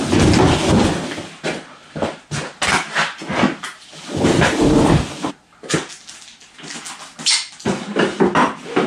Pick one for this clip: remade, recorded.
recorded